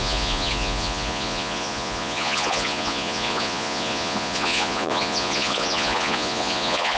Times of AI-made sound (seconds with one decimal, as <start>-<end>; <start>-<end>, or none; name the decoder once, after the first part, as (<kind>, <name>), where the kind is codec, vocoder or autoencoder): 0.0-7.0 (vocoder, Vocos)